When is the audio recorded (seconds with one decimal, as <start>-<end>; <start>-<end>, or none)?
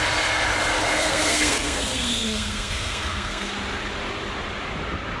0.0-0.9; 3.5-5.2